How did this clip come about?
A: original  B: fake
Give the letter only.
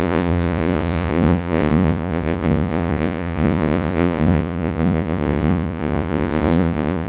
B